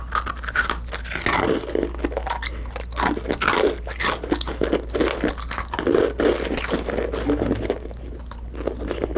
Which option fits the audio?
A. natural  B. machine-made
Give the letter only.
A